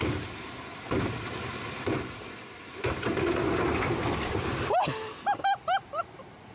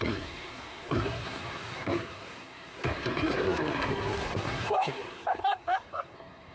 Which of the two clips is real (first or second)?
first